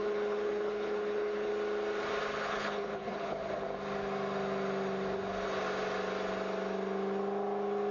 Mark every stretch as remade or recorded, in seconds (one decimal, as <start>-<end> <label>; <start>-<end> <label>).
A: 0.0-1.5 remade; 1.5-2.4 recorded; 2.4-3.4 remade; 3.4-7.9 recorded